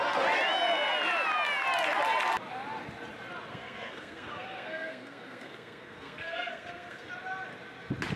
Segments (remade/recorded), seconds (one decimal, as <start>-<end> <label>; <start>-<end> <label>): 0.0-3.5 recorded; 3.5-7.1 remade; 7.1-8.2 recorded